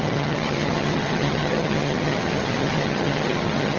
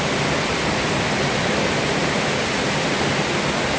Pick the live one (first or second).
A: second